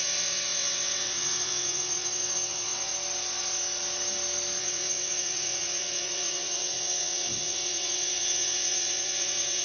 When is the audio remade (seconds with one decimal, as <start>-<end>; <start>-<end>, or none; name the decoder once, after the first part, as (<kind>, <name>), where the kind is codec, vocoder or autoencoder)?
0.0-2.9 (vocoder, WaveNeXt); 4.6-9.6